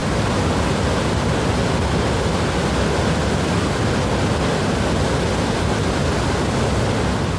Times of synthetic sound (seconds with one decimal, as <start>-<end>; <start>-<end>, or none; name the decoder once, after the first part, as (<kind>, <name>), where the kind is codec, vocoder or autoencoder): none